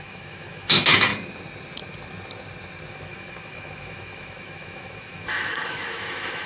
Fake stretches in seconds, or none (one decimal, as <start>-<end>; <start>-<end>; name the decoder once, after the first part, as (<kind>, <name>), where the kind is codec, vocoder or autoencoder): 0.0-1.1 (autoencoder, DAC-VAE); 2.9-6.5